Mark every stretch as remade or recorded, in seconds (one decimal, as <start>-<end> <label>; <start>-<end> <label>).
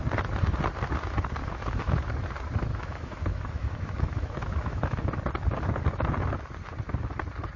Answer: 0.0-1.4 recorded; 1.4-2.1 remade; 2.1-2.7 recorded; 2.7-5.2 remade; 5.2-7.6 recorded